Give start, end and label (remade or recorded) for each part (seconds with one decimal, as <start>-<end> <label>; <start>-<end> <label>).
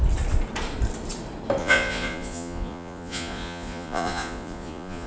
0.0-1.6 recorded; 1.6-5.1 remade